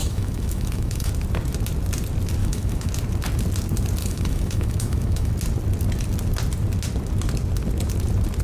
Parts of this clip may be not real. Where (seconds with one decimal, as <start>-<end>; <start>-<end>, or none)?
0.0-1.1; 2.4-2.9; 4.0-5.3